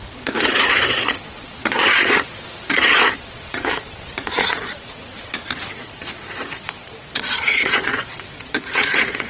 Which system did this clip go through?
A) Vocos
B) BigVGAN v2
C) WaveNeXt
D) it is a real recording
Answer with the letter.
A